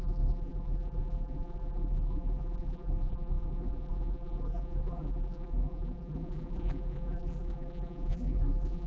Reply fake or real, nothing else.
fake